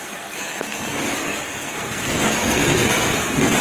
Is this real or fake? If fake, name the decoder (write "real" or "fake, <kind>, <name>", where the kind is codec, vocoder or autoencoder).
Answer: fake, codec, SNAC